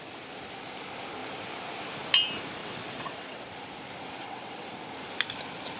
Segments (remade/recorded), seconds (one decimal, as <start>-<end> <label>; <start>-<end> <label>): 0.0-2.6 recorded; 2.6-3.5 remade; 3.5-4.2 recorded; 4.2-4.7 remade; 4.7-5.8 recorded